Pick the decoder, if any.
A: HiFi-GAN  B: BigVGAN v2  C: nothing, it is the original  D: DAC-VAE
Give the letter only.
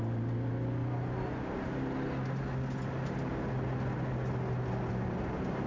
C